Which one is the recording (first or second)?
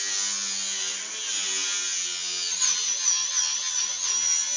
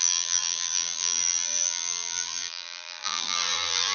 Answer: first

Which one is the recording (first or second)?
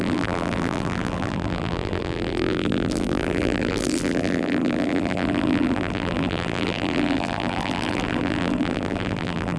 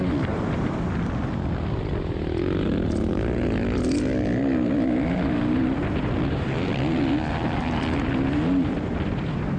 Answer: second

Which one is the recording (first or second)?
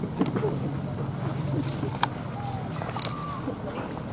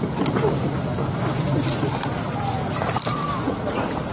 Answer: first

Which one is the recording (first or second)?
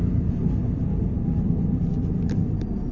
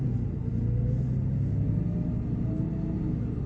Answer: second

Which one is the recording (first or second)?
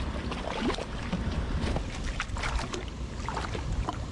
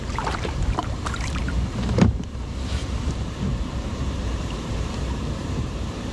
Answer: first